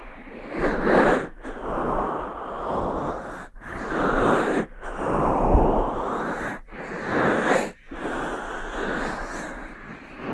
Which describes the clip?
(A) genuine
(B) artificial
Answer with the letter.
A